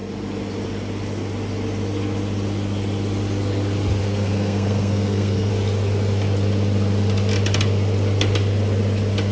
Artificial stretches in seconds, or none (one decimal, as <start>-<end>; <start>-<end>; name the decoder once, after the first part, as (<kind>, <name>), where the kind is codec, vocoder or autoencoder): 4.0-5.5 (codec, SNAC)